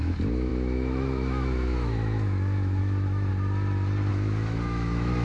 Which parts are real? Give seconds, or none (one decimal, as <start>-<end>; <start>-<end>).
3.3-4.1